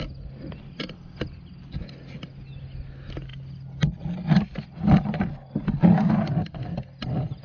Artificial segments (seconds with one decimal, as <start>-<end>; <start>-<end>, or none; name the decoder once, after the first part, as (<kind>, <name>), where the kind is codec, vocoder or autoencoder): none

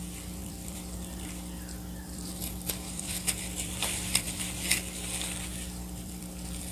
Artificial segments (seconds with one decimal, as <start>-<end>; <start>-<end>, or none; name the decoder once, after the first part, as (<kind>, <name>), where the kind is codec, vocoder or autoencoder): 0.4-4.4 (vocoder, BigVGAN v2); 5.5-6.7

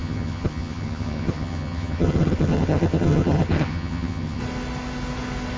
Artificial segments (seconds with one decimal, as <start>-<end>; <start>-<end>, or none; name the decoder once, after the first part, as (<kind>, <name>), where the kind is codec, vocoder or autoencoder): 0.0-4.4 (vocoder, HiFi-GAN)

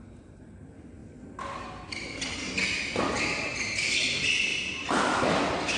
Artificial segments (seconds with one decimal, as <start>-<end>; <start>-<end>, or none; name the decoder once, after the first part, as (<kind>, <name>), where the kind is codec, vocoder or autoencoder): none

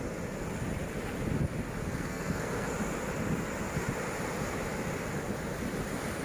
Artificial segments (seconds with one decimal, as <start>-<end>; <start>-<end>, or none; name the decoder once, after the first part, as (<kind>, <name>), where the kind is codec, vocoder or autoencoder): 1.8-2.7 (codec, SNAC)

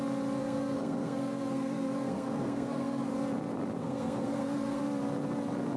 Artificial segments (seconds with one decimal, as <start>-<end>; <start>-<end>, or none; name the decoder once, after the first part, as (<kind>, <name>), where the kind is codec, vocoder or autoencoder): 0.4-3.1 (codec, SNAC); 3.8-4.8

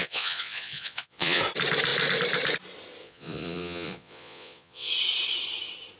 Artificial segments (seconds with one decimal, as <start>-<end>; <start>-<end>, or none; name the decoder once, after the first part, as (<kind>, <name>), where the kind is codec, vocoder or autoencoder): 0.0-1.4 (vocoder, Vocos); 3.0-4.9